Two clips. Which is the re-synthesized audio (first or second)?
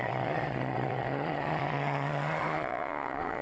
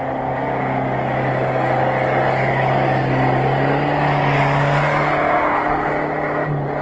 first